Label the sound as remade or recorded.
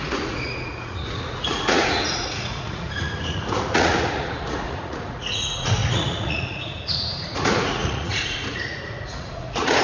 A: remade